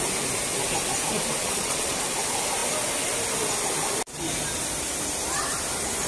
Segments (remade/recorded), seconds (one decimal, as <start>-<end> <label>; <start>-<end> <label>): 0.0-1.4 recorded; 1.4-2.0 remade; 2.0-6.1 recorded